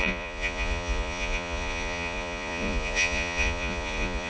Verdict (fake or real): fake